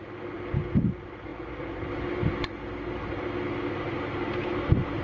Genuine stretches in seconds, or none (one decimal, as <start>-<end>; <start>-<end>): 0.0-5.0